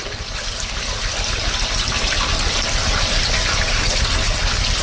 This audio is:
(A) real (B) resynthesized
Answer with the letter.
A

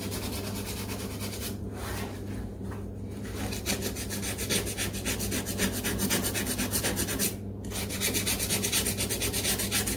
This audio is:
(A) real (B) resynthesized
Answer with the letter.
A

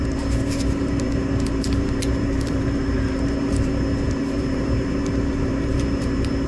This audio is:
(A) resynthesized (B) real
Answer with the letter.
A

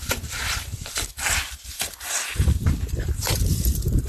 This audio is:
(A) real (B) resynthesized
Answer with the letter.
B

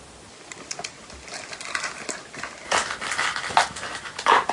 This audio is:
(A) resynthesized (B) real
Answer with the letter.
B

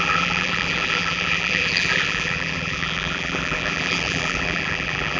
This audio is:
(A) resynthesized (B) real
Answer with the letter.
A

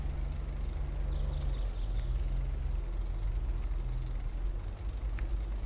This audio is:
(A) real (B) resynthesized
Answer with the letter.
A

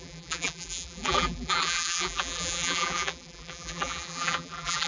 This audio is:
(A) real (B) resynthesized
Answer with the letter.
B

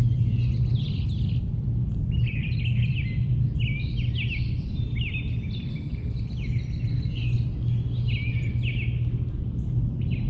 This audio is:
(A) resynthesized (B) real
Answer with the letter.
B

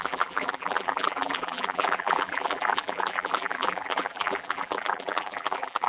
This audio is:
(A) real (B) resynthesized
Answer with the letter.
B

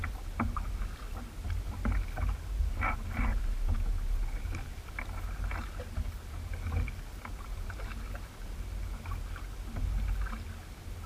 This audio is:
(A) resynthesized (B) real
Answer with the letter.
B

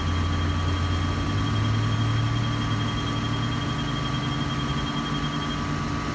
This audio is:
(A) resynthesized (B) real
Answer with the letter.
B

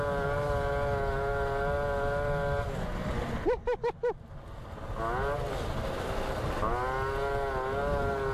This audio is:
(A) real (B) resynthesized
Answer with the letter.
A